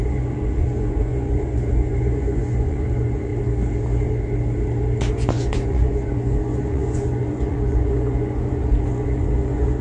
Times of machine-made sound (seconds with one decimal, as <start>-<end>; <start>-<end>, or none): 0.0-3.3; 5.1-9.8